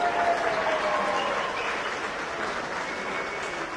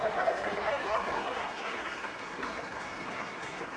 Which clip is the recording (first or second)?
first